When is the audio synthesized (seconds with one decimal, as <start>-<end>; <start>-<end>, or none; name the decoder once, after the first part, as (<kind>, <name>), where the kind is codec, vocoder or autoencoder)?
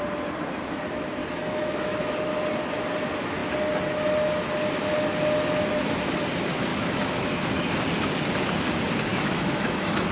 1.2-2.2 (autoencoder, DAC-VAE); 6.7-7.6; 9.1-10.1